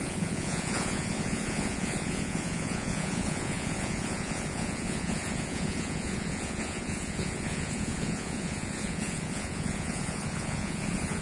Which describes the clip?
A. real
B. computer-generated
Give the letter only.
B